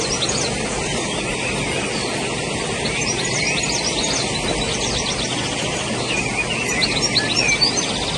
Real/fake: real